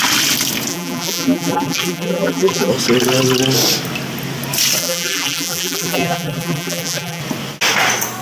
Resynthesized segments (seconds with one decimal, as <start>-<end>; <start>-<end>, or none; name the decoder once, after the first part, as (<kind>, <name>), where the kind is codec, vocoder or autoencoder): 0.7-2.7 (vocoder, BigVGAN v2); 4.8-7.2